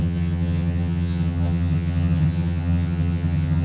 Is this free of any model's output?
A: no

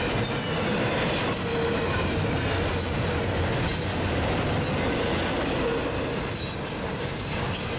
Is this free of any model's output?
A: yes